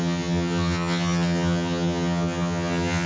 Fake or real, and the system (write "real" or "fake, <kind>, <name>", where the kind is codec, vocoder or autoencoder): fake, vocoder, HiFi-GAN